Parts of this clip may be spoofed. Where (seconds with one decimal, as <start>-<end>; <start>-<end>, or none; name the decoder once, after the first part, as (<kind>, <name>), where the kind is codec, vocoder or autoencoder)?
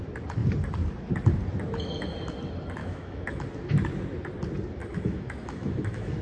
2.8-3.4 (autoencoder, DAC-VAE); 4.8-6.2